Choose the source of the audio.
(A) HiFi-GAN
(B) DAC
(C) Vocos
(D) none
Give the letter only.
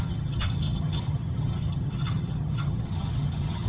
A